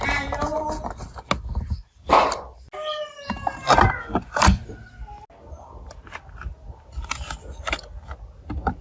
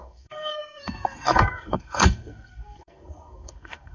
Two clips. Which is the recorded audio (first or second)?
first